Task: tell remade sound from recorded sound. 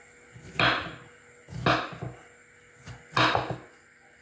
recorded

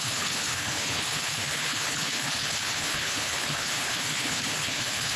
remade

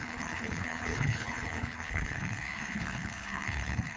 remade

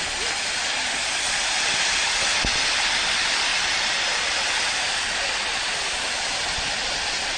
recorded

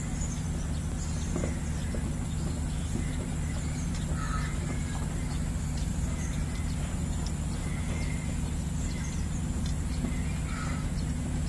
recorded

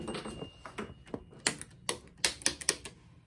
recorded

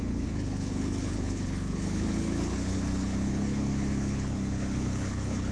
remade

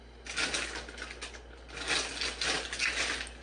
recorded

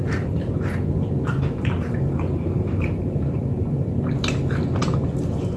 recorded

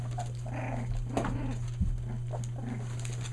recorded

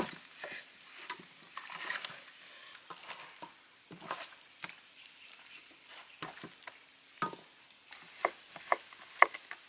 recorded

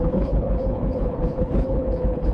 remade